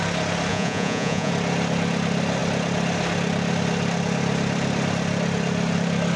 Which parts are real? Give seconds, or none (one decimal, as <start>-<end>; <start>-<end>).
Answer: 0.0-0.5; 1.3-6.2